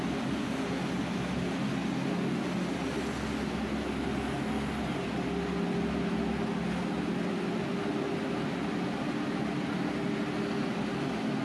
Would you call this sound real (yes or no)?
yes